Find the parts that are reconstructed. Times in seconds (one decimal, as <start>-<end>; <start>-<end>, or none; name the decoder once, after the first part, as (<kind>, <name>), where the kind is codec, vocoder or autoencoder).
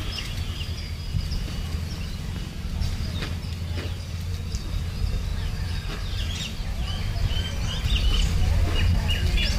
none